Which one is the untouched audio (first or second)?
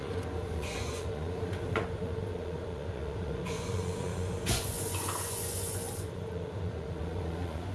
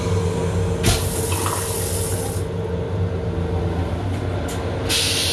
second